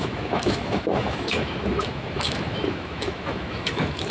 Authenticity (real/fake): fake